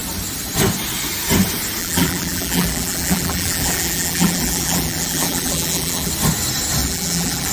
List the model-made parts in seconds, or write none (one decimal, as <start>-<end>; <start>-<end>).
1.8-6.1; 6.8-7.5